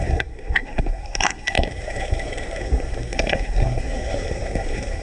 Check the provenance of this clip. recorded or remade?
remade